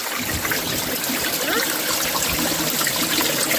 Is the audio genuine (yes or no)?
yes